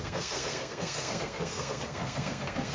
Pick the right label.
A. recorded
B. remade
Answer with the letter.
B